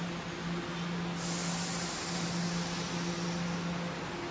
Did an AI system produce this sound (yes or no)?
no